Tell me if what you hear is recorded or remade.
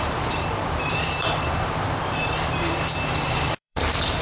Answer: remade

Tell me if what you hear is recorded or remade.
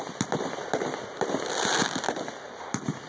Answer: remade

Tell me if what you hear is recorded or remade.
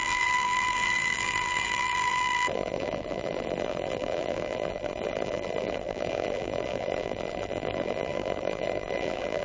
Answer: remade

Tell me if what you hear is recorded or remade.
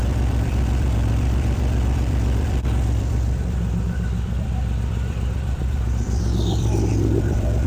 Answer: remade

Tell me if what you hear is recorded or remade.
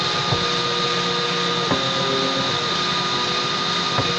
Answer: recorded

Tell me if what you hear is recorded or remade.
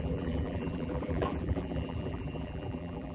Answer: remade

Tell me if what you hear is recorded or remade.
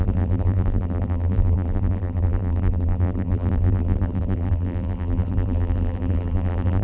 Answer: remade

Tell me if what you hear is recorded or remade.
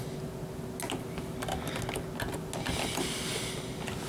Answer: recorded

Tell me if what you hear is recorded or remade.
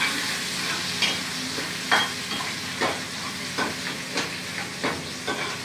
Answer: recorded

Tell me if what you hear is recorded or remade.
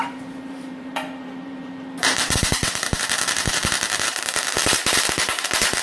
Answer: remade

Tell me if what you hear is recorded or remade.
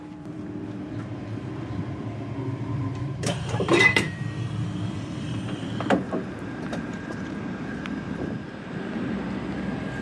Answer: remade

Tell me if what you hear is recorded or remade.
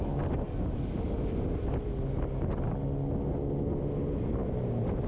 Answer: recorded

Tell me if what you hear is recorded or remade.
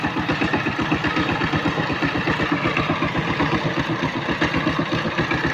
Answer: recorded